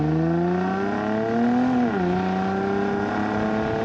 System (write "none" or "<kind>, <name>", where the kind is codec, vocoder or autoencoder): none